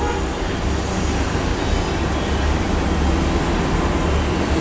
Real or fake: real